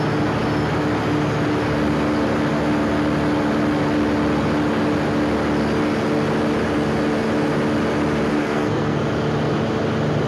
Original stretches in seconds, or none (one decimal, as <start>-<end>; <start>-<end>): 0.0-8.3; 9.0-10.3